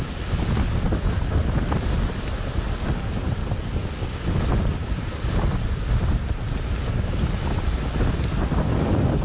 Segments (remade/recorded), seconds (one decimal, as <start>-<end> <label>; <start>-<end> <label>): 0.0-9.2 recorded